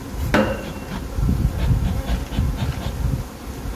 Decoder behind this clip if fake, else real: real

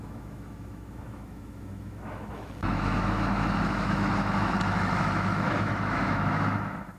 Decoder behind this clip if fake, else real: fake, autoencoder, DAC-VAE